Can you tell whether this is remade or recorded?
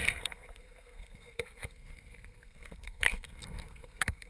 remade